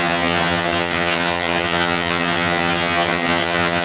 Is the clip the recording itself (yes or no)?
no